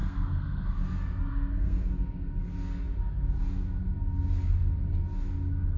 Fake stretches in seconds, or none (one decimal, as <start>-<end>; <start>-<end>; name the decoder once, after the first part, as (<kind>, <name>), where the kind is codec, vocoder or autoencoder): 0.0-0.6 (codec, SNAC); 1.3-1.9